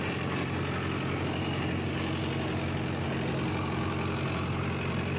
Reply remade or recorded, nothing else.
recorded